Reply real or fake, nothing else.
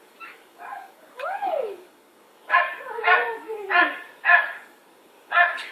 fake